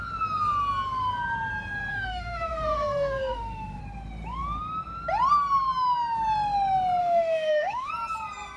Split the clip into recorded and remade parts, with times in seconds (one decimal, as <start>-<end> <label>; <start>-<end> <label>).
0.0-1.9 recorded; 1.9-3.8 remade; 3.8-7.0 recorded; 7.0-7.9 remade; 7.9-8.6 recorded